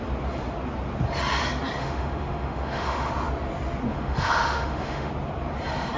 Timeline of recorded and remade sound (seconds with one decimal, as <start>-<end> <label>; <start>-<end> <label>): 0.0-1.8 recorded; 1.8-3.1 remade; 3.1-3.9 recorded; 3.9-5.1 remade; 5.1-6.0 recorded